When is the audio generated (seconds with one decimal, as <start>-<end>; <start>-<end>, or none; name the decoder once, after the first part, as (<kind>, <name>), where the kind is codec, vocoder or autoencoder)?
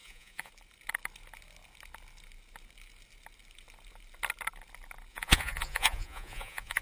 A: 0.0-0.5 (vocoder, Vocos); 5.1-6.8